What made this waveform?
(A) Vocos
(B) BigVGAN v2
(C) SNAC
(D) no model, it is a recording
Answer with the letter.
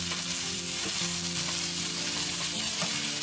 D